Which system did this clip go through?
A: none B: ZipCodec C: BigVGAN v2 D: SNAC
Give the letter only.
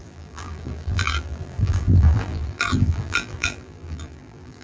C